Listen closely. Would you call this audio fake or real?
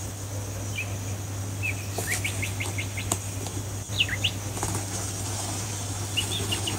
real